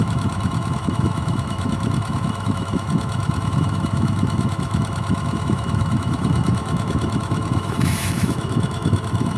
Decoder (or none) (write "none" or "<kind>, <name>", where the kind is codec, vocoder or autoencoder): autoencoder, DAC-VAE